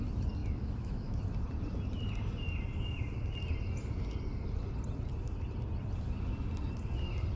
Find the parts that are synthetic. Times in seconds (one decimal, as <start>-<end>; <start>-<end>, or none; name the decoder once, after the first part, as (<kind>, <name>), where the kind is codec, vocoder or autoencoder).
0.4-1.3 (autoencoder, DAC-VAE)